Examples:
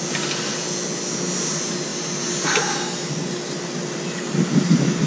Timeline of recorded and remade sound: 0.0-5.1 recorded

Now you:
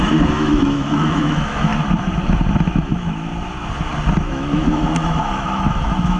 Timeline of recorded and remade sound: 0.0-1.7 remade; 1.7-2.7 recorded; 2.7-3.3 remade; 3.3-4.3 recorded; 4.3-6.2 remade